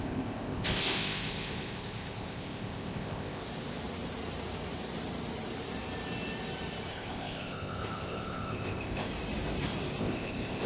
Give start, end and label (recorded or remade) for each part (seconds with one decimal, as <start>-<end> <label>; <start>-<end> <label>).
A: 0.0-3.4 remade; 3.4-6.9 recorded; 6.9-9.1 remade; 9.1-10.0 recorded; 10.0-10.7 remade